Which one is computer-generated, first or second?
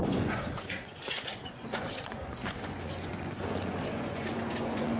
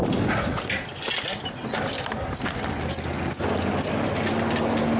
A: first